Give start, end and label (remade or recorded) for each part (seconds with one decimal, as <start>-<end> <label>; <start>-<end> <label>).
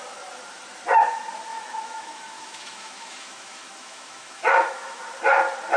0.0-1.5 recorded; 1.5-5.0 remade; 5.0-5.8 recorded